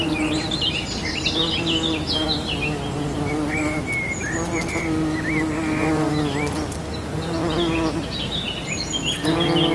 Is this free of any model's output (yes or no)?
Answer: yes